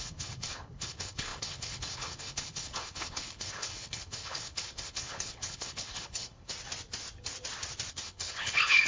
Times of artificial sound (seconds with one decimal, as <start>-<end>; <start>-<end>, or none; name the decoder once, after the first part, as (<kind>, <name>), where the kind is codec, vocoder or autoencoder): 0.0-6.5 (codec, HILCodec); 7.9-8.9

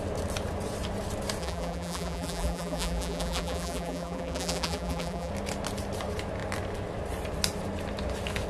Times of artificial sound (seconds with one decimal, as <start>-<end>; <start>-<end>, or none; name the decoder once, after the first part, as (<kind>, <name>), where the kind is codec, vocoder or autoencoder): 1.4-5.3 (vocoder, BigVGAN v2)